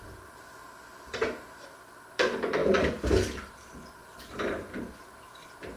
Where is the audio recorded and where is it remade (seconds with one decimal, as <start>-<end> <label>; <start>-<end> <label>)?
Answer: 0.0-4.0 recorded; 4.0-4.5 remade; 4.5-5.8 recorded